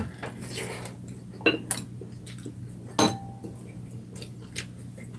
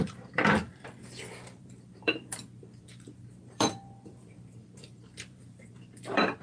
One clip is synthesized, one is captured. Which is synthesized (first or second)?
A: second